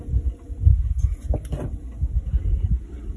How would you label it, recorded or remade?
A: recorded